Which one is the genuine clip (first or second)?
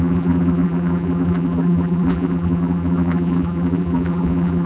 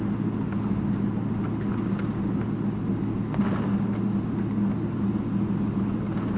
second